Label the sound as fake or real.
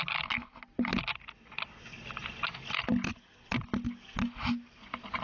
real